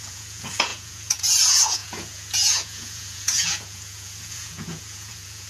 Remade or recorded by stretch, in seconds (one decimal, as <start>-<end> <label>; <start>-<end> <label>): 0.0-5.5 remade